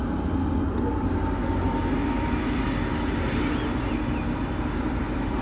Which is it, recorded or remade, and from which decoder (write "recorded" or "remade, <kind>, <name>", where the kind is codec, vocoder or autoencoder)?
recorded